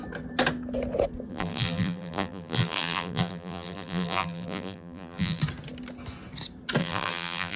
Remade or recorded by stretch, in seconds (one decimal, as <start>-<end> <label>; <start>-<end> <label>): 0.0-1.3 recorded; 1.3-5.4 remade; 5.4-6.8 recorded; 6.8-7.6 remade